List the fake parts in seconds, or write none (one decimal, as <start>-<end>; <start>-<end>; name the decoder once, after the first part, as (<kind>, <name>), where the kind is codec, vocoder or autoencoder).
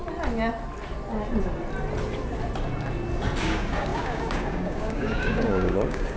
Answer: 3.4-6.2 (codec, DAC)